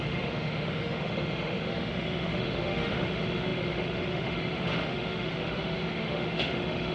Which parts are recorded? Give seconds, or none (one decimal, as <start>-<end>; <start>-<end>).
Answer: none